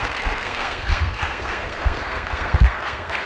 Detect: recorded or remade remade